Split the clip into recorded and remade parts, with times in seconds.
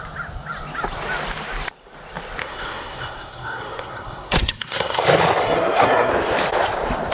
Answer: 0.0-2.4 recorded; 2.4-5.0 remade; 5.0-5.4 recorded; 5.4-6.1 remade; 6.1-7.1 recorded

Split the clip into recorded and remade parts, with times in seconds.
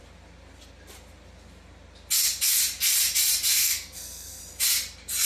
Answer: 0.0-3.6 recorded; 3.6-4.4 remade; 4.4-5.3 recorded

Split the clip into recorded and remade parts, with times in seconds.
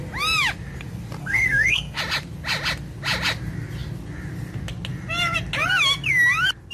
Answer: 0.0-1.2 recorded; 1.2-2.0 remade; 2.0-6.7 recorded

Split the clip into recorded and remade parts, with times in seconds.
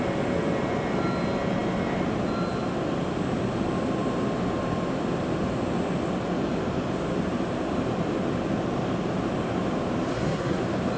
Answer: 0.0-10.1 recorded; 10.1-10.6 remade; 10.6-11.0 recorded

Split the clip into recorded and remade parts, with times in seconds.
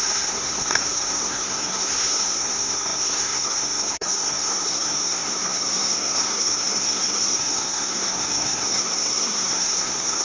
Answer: 0.0-10.2 remade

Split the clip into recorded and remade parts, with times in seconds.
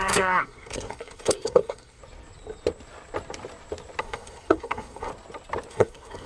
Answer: 0.0-2.0 remade; 2.0-4.0 recorded; 4.0-5.1 remade; 5.1-5.7 recorded; 5.7-6.3 remade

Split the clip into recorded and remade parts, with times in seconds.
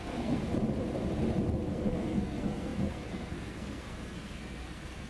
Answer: 0.0-0.4 remade; 0.4-1.7 recorded; 1.7-5.1 remade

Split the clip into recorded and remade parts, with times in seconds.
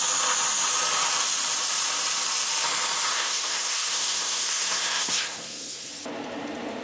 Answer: 0.0-3.1 recorded; 3.1-5.9 remade; 5.9-6.8 recorded